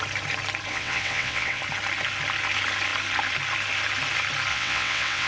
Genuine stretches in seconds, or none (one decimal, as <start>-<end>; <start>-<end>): 0.0-0.7; 1.6-4.5